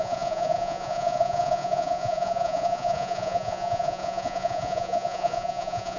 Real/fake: fake